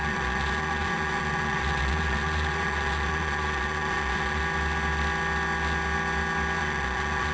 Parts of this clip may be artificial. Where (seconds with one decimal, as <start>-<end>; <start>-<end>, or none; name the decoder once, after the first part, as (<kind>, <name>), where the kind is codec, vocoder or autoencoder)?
0.0-4.4 (vocoder, Vocos); 6.6-7.3

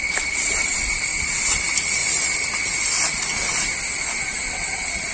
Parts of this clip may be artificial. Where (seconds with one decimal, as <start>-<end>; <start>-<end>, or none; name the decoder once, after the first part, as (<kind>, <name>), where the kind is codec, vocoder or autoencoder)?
none

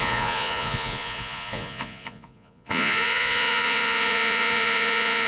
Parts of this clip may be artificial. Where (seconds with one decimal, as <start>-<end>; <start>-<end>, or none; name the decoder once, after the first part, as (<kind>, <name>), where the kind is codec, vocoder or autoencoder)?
0.0-5.3 (vocoder, Vocos)

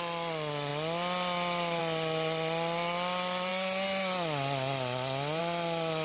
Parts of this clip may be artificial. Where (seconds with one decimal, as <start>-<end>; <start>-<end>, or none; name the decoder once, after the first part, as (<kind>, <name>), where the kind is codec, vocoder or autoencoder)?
none

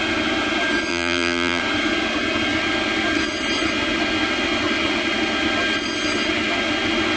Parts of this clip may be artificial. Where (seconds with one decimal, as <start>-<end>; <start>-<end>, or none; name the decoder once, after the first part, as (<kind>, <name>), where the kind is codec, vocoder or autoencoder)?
0.9-1.6 (vocoder, BigVGAN v2)

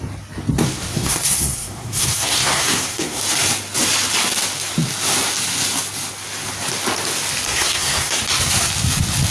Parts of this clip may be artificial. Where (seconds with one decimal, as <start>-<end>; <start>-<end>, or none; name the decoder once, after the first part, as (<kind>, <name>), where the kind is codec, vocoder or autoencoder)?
0.9-3.2 (codec, SNAC); 7.5-8.2

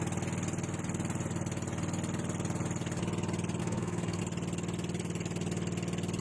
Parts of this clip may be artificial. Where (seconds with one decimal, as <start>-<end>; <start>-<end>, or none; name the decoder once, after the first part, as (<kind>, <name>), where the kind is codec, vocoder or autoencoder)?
3.6-4.2 (codec, SNAC)